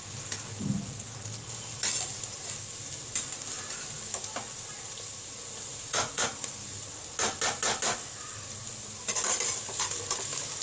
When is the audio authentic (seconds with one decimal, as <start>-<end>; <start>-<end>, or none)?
0.0-5.7; 6.3-10.6